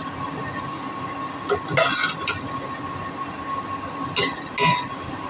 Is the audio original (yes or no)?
yes